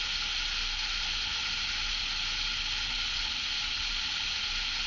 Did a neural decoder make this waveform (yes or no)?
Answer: no